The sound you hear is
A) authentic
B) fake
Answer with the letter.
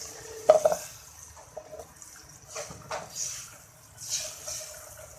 A